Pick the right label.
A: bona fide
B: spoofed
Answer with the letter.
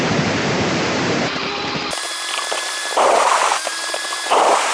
B